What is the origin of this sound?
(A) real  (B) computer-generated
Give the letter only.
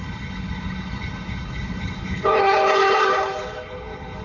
B